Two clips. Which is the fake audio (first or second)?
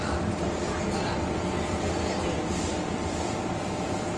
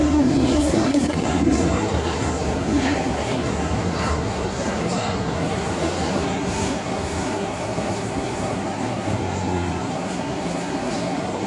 second